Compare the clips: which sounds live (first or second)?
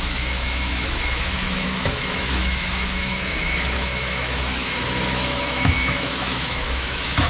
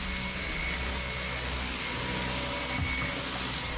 second